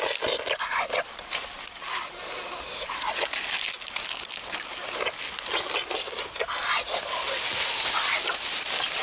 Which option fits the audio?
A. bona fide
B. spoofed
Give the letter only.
A